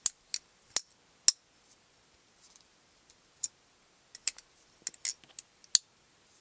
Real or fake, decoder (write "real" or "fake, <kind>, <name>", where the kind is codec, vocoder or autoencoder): real